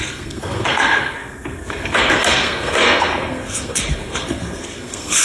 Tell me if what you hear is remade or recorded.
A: remade